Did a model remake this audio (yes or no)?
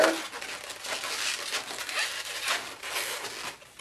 no